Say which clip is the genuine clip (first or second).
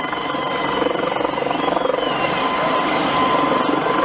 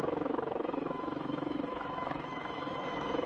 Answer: first